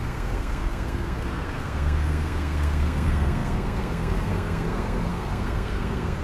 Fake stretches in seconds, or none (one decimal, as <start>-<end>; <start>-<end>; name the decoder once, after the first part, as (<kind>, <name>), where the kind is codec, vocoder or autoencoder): 0.0-6.2 (codec, SNAC)